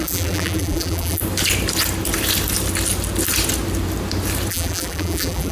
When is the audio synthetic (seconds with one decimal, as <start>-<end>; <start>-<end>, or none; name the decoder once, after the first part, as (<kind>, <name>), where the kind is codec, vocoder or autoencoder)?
0.0-1.2 (vocoder, BigVGAN v2); 4.5-5.5